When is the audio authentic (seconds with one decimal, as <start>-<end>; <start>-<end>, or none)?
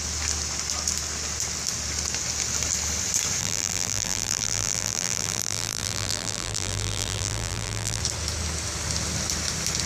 0.0-3.4; 8.0-9.9